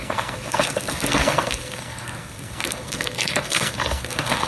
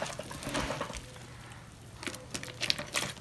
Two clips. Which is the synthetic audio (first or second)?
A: first